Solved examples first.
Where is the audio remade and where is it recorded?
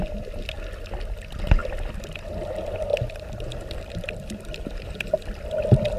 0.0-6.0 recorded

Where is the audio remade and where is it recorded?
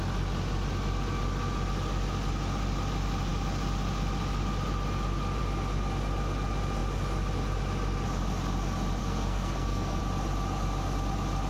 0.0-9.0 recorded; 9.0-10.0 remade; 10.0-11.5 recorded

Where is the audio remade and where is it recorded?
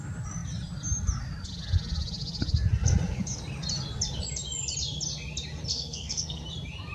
0.0-5.7 recorded; 5.7-6.4 remade; 6.4-6.9 recorded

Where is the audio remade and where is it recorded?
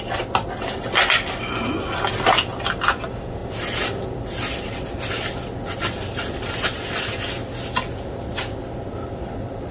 0.0-9.7 recorded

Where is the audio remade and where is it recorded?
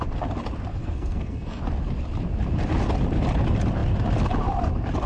0.0-0.7 recorded; 0.7-1.6 remade; 1.6-5.1 recorded